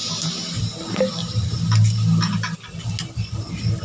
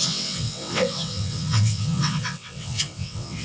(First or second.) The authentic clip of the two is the first